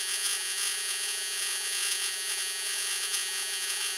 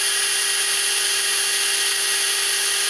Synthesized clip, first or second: first